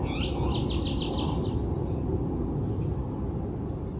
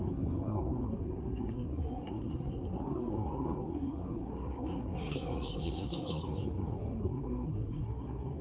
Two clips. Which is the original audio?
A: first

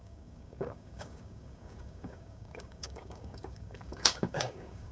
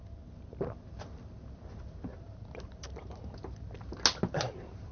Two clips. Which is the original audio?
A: second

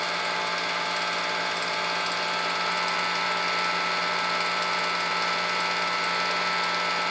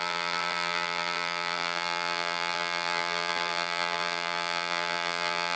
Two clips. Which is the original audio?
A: first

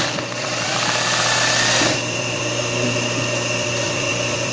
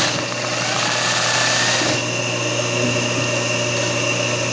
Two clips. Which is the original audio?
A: second